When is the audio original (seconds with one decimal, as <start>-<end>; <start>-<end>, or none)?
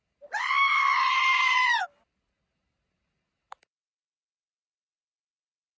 0.0-0.9; 1.8-5.8